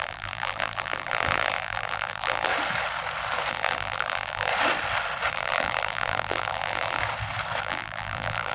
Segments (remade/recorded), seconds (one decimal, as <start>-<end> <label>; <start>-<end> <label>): 0.0-2.5 remade; 2.5-3.5 recorded; 3.5-4.5 remade; 4.5-5.3 recorded; 5.3-7.0 remade; 7.0-7.6 recorded; 7.6-8.5 remade